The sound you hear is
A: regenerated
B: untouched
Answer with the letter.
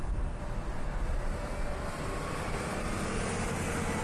B